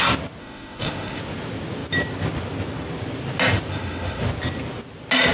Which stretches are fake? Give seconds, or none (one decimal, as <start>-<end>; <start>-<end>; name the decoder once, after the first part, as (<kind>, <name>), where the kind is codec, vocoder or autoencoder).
0.4-1.2 (autoencoder, DAC-VAE); 3.7-4.2